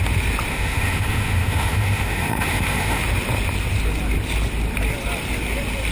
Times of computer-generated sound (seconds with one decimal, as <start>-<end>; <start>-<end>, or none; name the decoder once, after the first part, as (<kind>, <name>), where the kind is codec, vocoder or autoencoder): 0.5-3.0 (autoencoder, DAC-VAE)

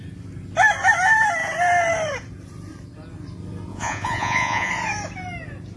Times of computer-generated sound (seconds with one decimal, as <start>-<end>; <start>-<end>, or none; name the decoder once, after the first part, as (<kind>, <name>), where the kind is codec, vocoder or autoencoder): 3.7-4.7 (vocoder, Vocos)

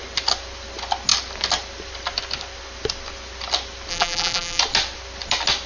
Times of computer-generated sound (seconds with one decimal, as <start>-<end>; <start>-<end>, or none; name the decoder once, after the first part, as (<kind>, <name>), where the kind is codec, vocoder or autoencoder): 3.9-4.6 (vocoder, BigVGAN v2)

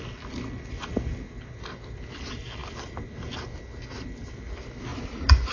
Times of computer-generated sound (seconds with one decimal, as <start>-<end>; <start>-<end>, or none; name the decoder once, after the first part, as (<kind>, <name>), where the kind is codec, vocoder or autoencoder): 4.9-5.5 (vocoder, Vocos)

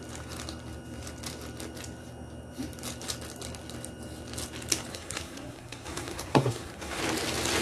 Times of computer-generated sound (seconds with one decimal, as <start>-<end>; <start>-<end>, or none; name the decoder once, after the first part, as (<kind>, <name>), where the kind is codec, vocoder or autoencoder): 4.9-7.0 (codec, SNAC)

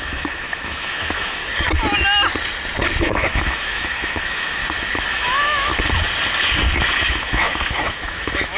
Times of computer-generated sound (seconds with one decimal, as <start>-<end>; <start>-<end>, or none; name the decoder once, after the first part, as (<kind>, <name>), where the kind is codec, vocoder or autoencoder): 0.0-1.4 (autoencoder, DAC-VAE); 3.0-4.6; 5.1-5.7; 6.9-8.6